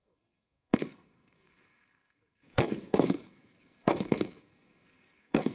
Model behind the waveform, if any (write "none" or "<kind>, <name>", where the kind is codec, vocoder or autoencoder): codec, SNAC